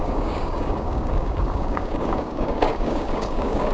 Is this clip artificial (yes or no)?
yes